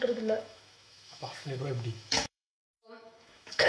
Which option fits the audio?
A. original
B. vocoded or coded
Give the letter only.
B